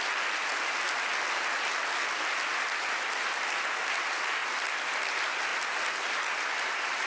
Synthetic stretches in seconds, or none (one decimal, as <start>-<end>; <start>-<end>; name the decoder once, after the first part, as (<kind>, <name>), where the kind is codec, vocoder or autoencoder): none